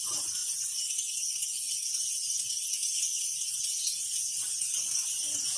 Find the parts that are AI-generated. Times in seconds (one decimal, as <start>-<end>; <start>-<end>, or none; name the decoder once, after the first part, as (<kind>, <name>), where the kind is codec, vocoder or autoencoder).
none